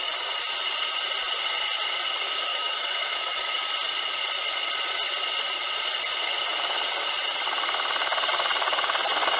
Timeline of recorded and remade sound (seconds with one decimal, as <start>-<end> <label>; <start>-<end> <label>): 0.0-2.5 recorded; 2.5-3.7 remade; 3.7-9.4 recorded